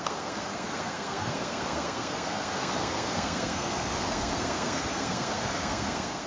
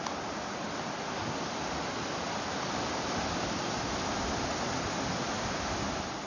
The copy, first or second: first